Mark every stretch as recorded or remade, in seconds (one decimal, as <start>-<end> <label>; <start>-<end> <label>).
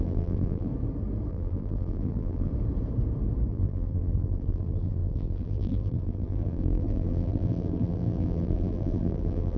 0.0-0.7 remade; 0.7-1.3 recorded; 1.3-2.5 remade; 2.5-3.5 recorded; 3.5-9.6 remade